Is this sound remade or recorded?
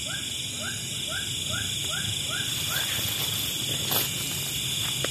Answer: recorded